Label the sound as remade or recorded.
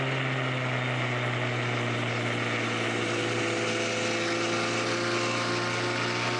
recorded